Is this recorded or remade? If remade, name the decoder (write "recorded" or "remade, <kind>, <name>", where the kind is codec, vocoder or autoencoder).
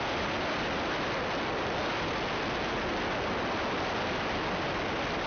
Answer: recorded